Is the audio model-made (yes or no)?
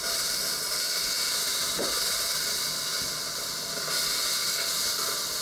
no